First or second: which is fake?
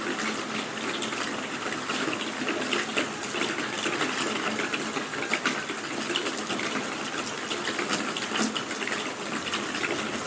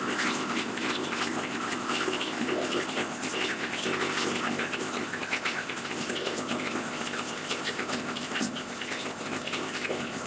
second